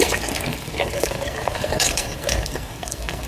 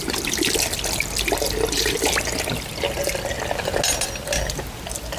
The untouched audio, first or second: second